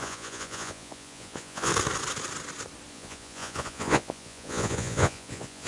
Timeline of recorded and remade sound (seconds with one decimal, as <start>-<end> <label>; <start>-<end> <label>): 0.0-1.7 remade; 1.7-2.9 recorded; 2.9-5.7 remade